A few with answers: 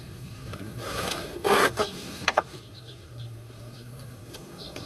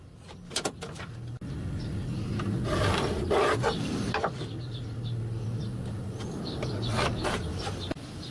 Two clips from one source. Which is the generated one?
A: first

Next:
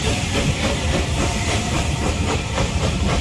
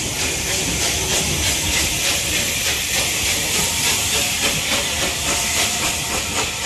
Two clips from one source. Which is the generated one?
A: first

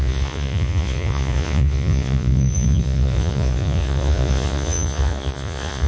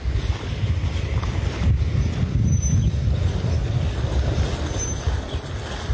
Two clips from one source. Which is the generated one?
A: first